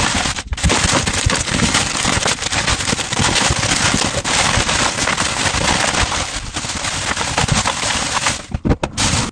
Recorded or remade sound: recorded